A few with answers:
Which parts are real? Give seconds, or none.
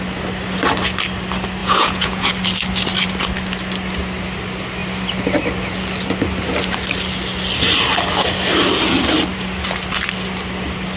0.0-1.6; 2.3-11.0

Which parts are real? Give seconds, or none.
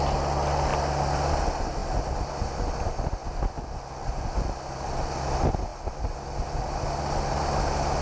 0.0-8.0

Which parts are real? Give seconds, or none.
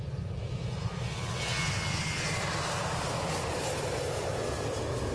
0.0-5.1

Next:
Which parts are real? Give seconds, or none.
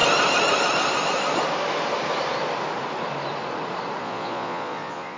0.0-4.0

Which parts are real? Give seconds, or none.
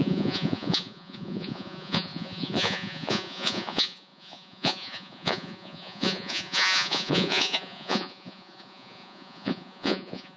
none